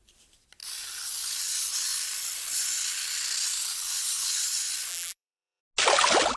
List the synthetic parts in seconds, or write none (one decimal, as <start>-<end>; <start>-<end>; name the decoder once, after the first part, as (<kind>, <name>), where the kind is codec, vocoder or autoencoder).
4.9-5.6 (vocoder, BigVGAN v2)